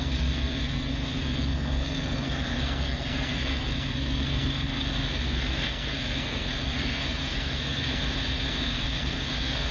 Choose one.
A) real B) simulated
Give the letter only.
B